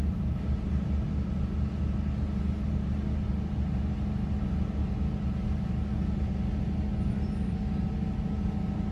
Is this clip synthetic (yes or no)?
no